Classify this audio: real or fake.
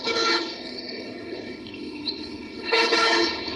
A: fake